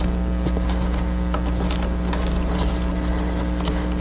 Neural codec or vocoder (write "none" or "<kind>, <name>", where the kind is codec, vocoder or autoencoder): none